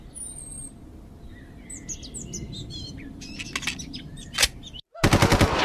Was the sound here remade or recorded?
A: recorded